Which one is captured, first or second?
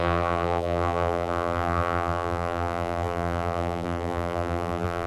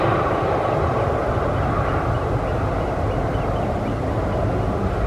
second